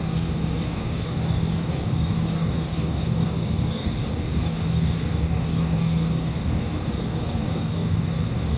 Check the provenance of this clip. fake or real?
fake